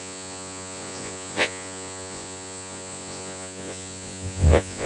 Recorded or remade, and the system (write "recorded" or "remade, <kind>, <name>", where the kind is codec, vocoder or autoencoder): remade, vocoder, Vocos